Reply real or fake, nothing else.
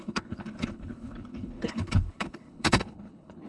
fake